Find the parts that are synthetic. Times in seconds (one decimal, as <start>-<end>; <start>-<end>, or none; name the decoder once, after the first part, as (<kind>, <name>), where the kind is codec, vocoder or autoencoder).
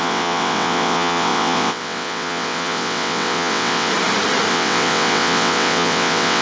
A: 0.0-3.9 (vocoder, WaveNeXt); 4.5-6.4